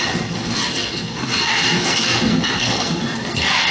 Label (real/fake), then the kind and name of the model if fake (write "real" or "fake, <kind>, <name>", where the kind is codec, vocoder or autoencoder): fake, codec, SNAC